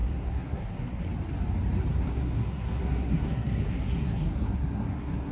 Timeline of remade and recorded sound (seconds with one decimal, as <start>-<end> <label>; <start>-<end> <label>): 0.0-1.0 remade; 1.0-1.9 recorded; 1.9-5.3 remade